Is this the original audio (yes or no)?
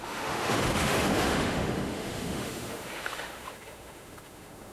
no